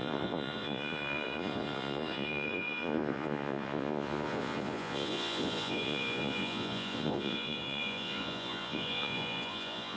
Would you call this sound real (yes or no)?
no